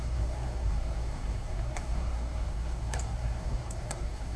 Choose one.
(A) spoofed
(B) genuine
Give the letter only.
A